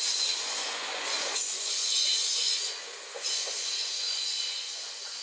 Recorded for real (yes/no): no